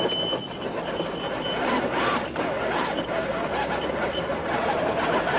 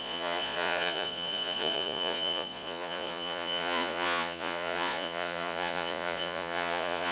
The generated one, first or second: second